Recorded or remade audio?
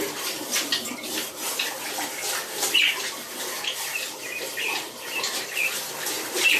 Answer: recorded